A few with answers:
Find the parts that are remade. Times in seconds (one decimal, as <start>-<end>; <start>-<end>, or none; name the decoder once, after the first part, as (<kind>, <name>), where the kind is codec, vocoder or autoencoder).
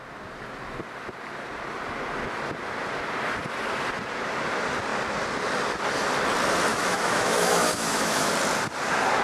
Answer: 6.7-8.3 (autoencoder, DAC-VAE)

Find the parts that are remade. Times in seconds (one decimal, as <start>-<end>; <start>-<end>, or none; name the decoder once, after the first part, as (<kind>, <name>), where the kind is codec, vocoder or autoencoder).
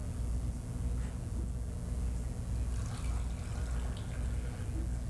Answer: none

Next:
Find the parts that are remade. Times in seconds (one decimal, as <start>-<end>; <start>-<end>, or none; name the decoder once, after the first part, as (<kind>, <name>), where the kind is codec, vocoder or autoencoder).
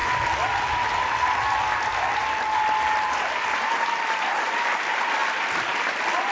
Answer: none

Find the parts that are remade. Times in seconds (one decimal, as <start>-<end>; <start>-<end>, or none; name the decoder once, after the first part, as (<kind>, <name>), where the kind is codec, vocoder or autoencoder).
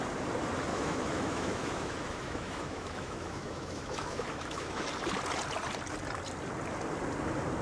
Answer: 0.7-4.8 (autoencoder, DAC-VAE)